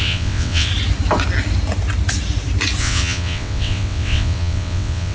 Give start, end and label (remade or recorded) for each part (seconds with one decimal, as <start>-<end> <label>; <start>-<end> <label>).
0.0-0.7 remade; 0.7-2.8 recorded; 2.8-5.1 remade